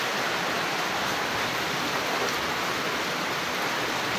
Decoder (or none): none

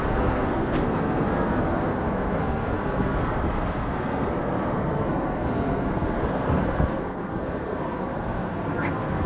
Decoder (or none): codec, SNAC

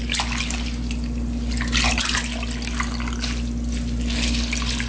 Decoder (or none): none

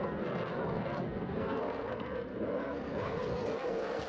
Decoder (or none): codec, SNAC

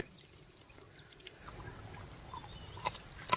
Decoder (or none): none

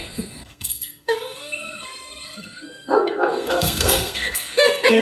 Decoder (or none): codec, SNAC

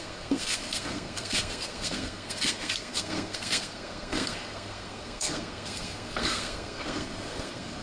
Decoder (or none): codec, SNAC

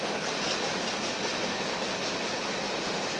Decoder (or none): none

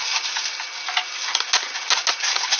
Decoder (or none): none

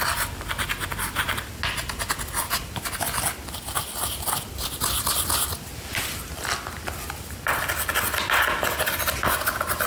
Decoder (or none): none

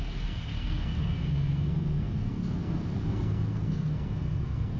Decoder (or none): codec, SNAC